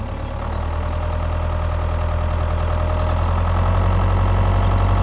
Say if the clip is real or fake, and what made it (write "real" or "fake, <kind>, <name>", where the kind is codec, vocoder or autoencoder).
real